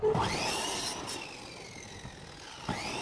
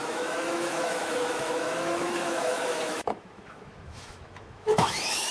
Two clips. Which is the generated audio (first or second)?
second